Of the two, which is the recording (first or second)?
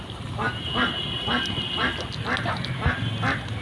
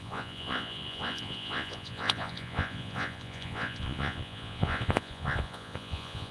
first